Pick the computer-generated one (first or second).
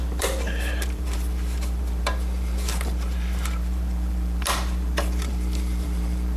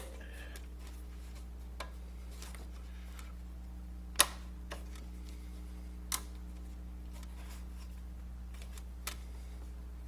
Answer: first